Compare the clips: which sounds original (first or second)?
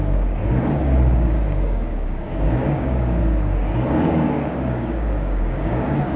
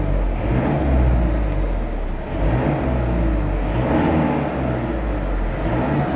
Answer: second